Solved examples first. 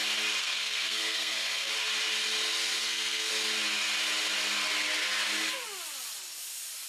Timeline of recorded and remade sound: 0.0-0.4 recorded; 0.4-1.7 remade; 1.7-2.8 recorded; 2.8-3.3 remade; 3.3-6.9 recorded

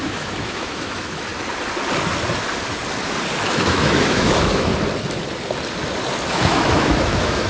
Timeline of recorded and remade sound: 0.0-1.3 remade; 1.3-3.4 recorded; 3.4-4.7 remade; 4.7-6.3 recorded; 6.3-7.5 remade

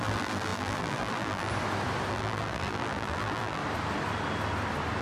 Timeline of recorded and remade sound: 0.0-1.5 remade; 1.5-2.1 recorded; 2.1-3.6 remade; 3.6-5.0 recorded

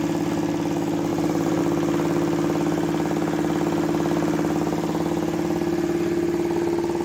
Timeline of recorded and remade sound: 0.0-1.1 recorded; 1.1-1.6 remade; 1.6-7.0 recorded

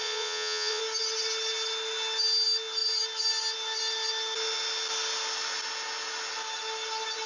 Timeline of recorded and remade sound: 0.0-0.8 remade; 0.8-7.3 recorded

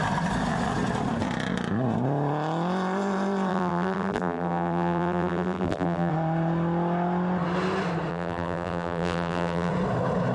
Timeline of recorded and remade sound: 0.0-3.5 recorded; 3.5-6.1 remade; 6.1-8.1 recorded; 8.1-9.7 remade; 9.7-10.3 recorded

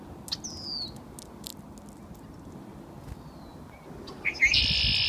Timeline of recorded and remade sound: 0.0-5.1 recorded